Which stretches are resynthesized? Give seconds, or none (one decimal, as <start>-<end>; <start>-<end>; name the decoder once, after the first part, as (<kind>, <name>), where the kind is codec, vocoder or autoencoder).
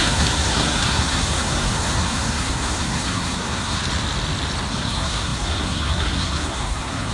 0.0-3.8 (codec, SNAC); 4.7-7.1